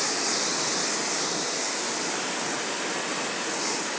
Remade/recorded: recorded